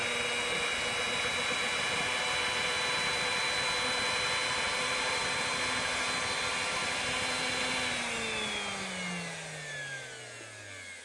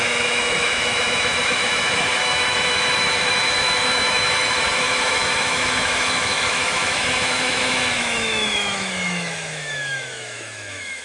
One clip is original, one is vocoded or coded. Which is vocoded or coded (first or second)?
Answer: second